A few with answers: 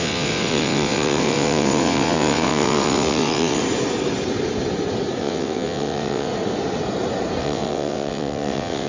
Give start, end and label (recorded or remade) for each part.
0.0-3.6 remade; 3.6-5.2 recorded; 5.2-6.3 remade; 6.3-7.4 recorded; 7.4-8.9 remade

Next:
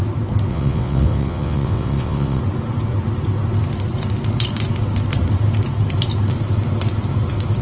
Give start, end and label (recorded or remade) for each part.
0.0-0.5 recorded; 0.5-2.4 remade; 2.4-7.6 recorded

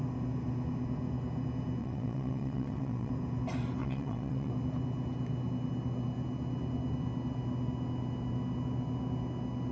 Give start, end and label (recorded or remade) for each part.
0.0-1.8 recorded; 1.8-3.1 remade; 3.1-3.8 recorded; 3.8-4.5 remade; 4.5-9.7 recorded

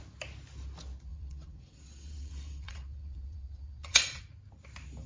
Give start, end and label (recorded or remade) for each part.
0.0-1.1 recorded; 1.1-4.2 remade; 4.2-5.1 recorded

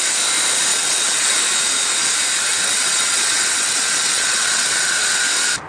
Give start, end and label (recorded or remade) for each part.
0.0-0.7 recorded; 0.7-1.4 remade; 1.4-2.5 recorded; 2.5-5.2 remade; 5.2-5.7 recorded